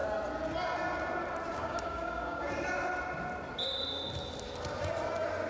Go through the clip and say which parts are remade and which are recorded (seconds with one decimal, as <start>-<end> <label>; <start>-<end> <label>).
0.0-1.5 recorded; 1.5-2.5 remade; 2.5-5.5 recorded